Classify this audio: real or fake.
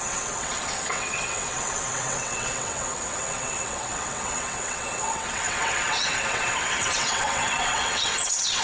fake